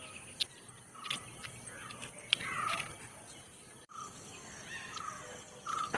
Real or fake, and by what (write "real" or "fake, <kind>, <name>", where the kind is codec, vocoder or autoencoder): real